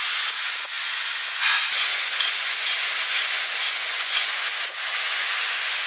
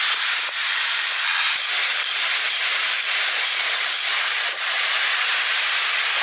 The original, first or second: second